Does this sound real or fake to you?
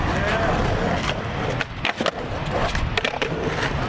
real